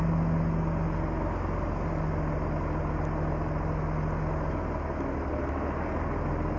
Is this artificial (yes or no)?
no